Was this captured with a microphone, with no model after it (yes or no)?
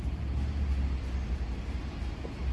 yes